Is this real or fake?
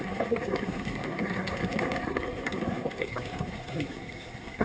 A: fake